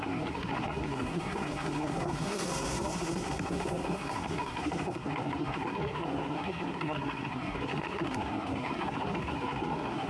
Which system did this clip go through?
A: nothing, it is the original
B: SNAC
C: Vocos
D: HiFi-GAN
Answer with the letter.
B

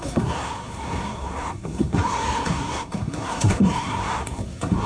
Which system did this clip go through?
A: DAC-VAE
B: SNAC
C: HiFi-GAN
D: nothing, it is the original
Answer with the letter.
B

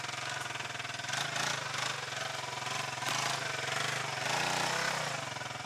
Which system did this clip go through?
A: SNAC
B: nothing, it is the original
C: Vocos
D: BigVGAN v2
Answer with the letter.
B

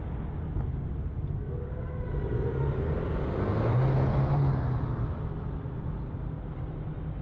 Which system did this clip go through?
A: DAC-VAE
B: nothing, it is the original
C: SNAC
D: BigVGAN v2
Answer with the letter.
B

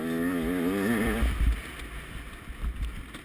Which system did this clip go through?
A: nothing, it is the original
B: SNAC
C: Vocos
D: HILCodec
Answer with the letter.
A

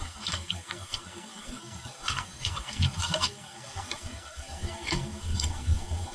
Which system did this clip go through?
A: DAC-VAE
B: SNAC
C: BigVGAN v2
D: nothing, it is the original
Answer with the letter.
B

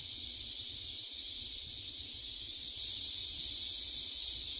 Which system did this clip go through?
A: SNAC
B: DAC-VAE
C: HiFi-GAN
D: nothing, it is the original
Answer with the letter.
D